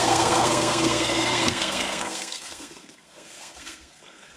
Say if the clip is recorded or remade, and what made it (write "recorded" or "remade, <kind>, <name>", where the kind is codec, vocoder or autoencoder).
remade, codec, SNAC